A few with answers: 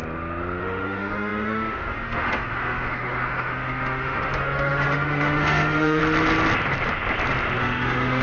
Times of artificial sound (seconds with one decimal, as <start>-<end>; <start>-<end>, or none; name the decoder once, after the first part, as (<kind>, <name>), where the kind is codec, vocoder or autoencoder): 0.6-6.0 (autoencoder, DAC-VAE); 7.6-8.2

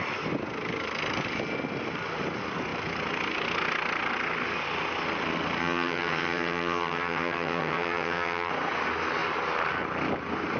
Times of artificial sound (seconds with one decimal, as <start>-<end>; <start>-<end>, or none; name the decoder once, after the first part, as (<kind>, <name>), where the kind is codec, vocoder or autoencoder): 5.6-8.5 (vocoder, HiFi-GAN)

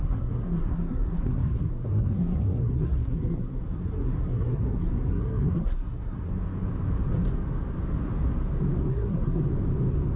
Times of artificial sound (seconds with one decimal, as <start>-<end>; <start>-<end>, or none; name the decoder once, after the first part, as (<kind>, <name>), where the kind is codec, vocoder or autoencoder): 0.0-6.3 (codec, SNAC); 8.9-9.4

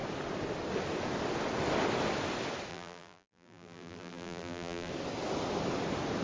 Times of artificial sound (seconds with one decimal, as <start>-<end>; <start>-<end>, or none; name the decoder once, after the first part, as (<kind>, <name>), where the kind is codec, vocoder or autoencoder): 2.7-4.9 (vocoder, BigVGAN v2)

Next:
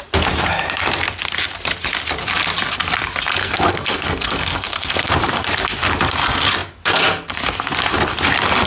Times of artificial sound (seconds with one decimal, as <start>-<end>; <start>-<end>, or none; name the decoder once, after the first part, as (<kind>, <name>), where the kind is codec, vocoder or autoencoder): 3.4-5.1 (codec, SNAC)

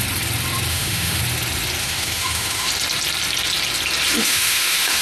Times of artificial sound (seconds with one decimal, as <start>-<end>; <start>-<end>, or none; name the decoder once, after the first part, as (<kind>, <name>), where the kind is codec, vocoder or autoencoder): 0.7-1.2 (autoencoder, DAC-VAE); 1.8-2.7; 4.2-5.0

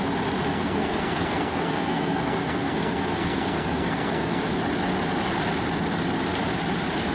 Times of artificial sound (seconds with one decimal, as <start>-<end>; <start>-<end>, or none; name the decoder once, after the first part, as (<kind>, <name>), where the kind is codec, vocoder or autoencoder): 0.5-4.4 (codec, SNAC)

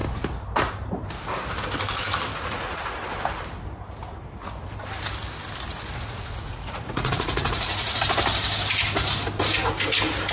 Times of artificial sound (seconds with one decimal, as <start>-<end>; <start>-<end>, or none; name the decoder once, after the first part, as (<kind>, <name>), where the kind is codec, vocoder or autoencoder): 2.3-2.8 (vocoder, Vocos); 5.7-8.0